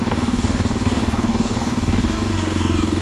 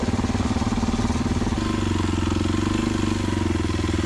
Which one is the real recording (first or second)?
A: second